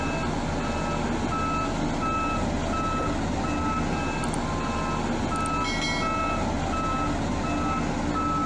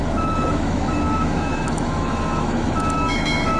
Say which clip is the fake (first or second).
second